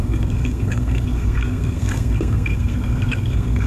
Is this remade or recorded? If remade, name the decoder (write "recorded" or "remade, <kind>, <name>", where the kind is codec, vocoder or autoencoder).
remade, codec, SNAC